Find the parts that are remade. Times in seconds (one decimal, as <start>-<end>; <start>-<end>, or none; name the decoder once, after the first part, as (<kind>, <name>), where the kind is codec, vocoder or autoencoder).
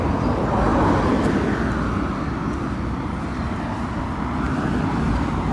none